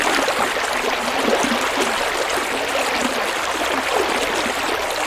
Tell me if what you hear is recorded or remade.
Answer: recorded